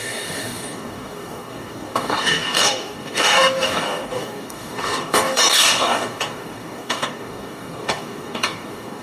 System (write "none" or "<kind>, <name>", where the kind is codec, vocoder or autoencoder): codec, DAC